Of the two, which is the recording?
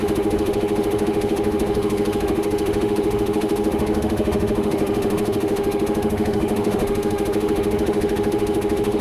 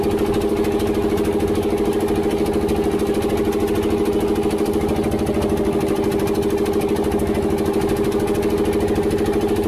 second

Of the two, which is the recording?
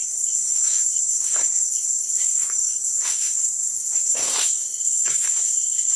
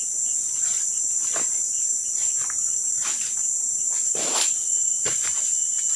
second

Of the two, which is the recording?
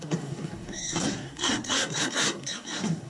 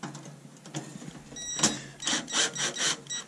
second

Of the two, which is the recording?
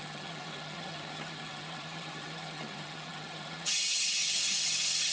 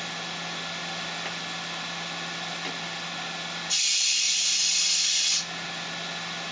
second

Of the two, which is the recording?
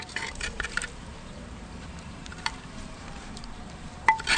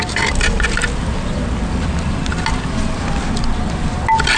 second